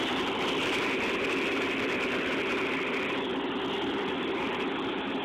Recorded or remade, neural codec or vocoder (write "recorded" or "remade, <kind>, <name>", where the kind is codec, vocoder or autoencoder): recorded